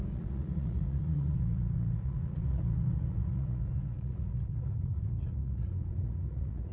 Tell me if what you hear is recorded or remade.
remade